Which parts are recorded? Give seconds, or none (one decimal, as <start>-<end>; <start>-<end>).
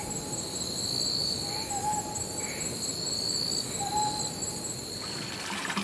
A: 0.0-5.8